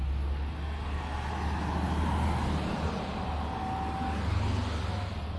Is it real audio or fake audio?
real